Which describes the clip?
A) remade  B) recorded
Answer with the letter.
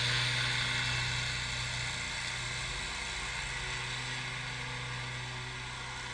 B